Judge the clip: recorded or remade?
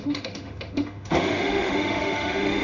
remade